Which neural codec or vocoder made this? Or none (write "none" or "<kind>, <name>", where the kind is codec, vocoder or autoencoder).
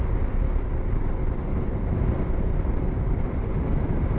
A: none